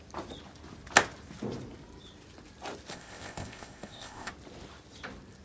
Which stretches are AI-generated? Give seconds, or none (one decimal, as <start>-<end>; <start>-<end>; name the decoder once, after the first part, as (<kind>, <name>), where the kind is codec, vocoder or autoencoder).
2.9-4.3 (codec, ZipCodec)